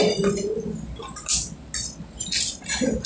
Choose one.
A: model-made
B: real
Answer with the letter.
B